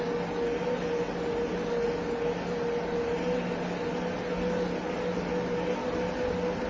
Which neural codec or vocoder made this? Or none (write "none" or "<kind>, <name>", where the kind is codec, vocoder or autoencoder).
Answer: none